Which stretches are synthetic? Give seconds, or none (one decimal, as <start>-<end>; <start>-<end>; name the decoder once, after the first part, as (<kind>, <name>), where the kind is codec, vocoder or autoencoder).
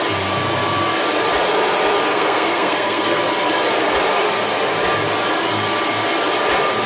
2.1-3.2 (codec, SNAC)